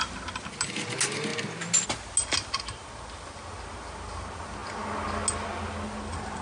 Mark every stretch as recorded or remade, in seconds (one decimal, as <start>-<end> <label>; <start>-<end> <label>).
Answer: 0.0-6.4 recorded